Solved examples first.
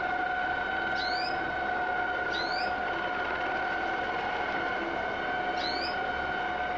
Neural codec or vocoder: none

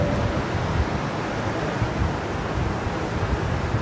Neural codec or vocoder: none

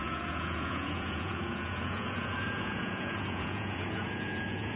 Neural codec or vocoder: vocoder, Vocos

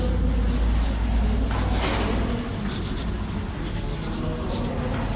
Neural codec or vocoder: none